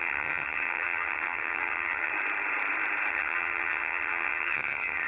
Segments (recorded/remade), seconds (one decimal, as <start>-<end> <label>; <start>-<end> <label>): 0.0-2.1 remade; 2.1-3.1 recorded; 3.1-5.1 remade